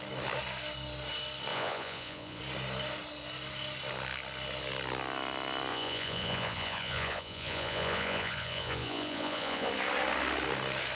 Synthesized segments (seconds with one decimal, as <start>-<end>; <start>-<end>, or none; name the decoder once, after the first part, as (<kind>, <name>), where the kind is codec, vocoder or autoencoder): 1.5-2.4 (vocoder, Vocos); 5.7-9.7